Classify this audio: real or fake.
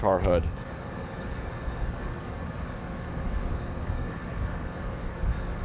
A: fake